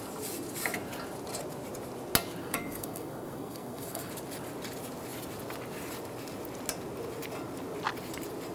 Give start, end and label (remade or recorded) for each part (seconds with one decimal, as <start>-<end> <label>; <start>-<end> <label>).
0.0-2.4 recorded; 2.4-4.1 remade; 4.1-8.5 recorded